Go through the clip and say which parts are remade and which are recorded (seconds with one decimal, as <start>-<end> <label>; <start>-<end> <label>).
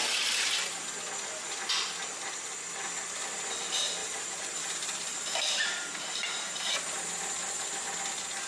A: 0.0-4.0 recorded; 4.0-7.2 remade; 7.2-8.5 recorded